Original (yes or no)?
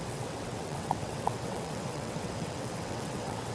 no